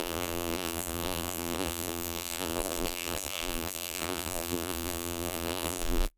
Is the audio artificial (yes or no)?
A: yes